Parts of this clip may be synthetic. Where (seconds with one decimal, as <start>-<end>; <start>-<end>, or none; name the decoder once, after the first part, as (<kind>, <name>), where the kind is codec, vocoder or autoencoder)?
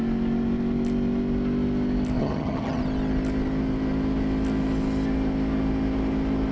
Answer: 2.2-2.8 (vocoder, HiFi-GAN)